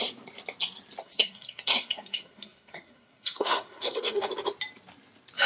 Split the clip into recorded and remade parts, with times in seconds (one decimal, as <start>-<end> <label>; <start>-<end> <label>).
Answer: 0.0-1.0 recorded; 1.0-4.3 remade; 4.3-5.5 recorded